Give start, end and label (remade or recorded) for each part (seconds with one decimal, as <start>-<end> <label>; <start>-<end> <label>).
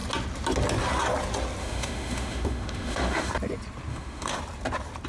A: 0.0-1.6 recorded; 1.6-3.3 remade; 3.3-3.9 recorded; 3.9-4.4 remade; 4.4-5.1 recorded